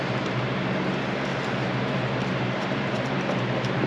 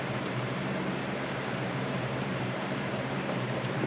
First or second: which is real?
first